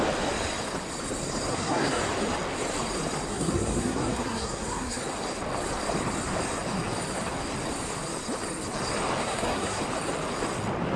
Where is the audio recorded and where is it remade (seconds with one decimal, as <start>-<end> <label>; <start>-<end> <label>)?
0.0-1.5 recorded; 1.5-2.0 remade; 2.0-3.3 recorded; 3.3-5.0 remade; 5.0-9.2 recorded; 9.2-9.8 remade; 9.8-11.0 recorded